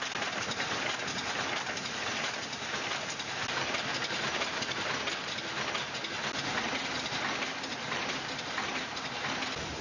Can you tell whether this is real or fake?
real